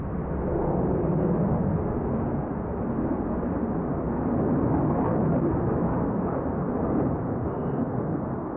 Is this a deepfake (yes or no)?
no